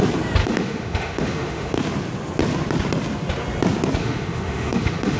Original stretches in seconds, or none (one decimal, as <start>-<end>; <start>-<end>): 0.0-0.4; 1.8-4.0